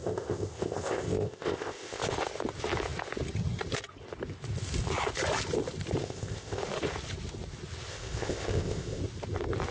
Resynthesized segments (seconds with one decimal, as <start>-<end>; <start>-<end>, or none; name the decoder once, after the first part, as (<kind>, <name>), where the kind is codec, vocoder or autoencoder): 0.0-2.0 (codec, ZipCodec); 6.0-6.6; 7.9-9.0